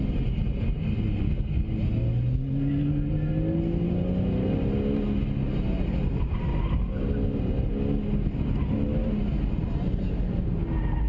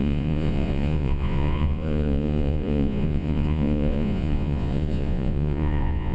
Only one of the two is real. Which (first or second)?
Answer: first